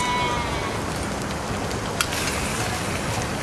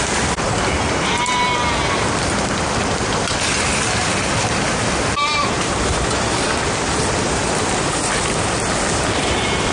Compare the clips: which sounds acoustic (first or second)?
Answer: first